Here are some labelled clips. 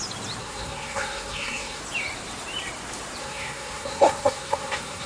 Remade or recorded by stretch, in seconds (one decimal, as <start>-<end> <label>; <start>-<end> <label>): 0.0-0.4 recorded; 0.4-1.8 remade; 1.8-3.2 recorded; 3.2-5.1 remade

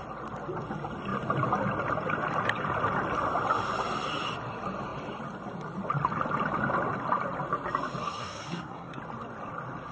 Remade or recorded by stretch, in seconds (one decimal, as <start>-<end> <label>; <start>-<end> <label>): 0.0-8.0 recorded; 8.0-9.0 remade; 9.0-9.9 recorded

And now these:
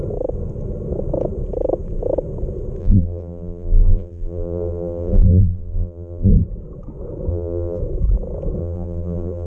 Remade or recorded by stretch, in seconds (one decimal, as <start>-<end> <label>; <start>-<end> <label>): 0.0-2.8 recorded; 2.8-6.3 remade; 6.3-7.3 recorded; 7.3-7.8 remade; 7.8-8.6 recorded; 8.6-9.5 remade